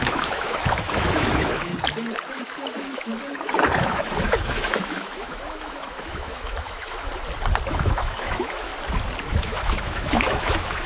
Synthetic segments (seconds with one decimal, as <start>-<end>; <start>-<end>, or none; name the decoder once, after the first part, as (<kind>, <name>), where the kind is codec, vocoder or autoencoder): 0.0-1.7 (autoencoder, DAC-VAE); 2.3-3.1; 3.8-7.1; 7.7-8.7; 9.2-10.9